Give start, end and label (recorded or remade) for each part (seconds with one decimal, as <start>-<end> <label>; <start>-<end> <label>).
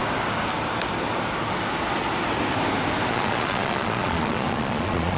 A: 0.0-3.1 recorded; 3.1-5.2 remade